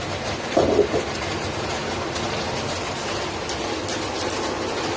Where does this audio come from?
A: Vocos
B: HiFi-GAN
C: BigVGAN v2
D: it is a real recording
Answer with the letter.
D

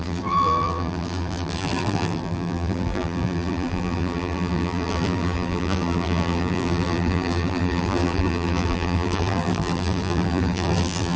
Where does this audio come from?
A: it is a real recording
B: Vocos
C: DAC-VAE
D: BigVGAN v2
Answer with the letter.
D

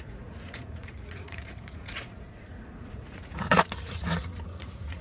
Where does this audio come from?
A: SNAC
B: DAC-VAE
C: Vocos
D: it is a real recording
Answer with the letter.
C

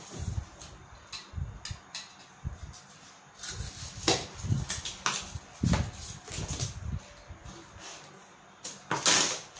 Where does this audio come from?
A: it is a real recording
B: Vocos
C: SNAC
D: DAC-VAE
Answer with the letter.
A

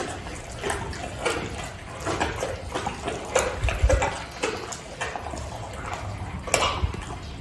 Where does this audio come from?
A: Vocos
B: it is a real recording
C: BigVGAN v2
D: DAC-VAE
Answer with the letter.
B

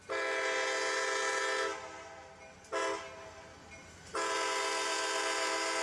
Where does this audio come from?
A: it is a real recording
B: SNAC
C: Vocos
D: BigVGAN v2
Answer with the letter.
A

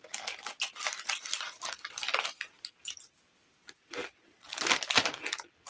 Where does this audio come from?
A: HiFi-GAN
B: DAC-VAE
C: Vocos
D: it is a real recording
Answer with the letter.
D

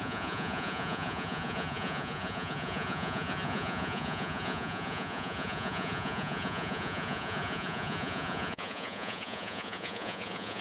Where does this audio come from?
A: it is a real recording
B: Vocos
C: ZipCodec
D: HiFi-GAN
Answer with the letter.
B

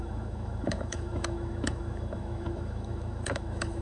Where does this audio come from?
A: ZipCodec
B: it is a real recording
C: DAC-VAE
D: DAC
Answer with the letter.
C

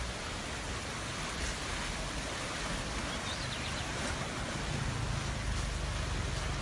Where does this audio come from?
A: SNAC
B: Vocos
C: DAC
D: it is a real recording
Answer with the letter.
D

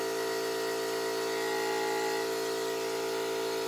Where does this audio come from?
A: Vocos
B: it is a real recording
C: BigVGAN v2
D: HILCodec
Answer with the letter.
B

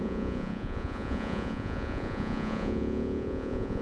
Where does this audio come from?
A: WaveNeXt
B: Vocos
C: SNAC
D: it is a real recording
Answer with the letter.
B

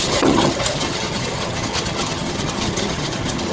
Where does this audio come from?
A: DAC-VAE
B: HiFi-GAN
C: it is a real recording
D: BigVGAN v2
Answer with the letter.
B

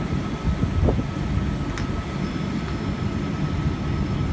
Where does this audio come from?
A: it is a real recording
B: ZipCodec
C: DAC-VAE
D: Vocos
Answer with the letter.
A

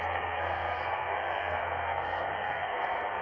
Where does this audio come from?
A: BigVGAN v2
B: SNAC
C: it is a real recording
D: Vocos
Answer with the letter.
B